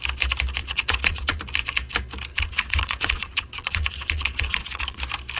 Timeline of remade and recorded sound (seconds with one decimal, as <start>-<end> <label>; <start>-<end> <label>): 0.0-0.6 recorded; 0.6-1.4 remade; 1.4-2.3 recorded; 2.3-5.0 remade; 5.0-5.4 recorded